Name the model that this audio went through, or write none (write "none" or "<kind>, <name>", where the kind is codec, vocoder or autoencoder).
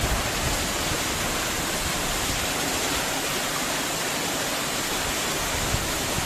none